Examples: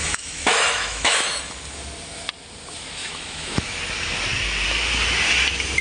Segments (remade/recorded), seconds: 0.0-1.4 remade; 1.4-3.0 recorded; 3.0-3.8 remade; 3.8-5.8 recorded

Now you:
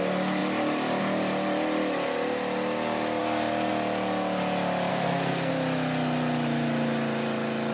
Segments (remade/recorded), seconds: 0.0-4.9 recorded; 4.9-5.5 remade; 5.5-7.7 recorded